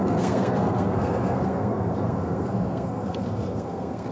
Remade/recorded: remade